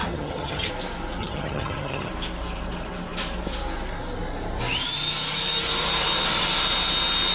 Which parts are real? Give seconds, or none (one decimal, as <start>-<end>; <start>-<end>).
0.7-1.2; 2.1-7.3